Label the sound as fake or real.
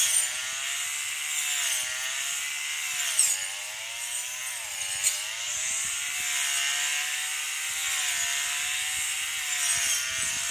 real